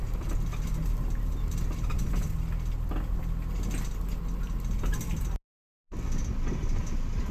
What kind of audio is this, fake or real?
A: real